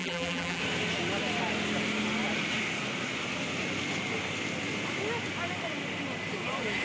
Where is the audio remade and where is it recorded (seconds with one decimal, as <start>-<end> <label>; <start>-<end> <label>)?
0.0-0.6 remade; 0.6-6.8 recorded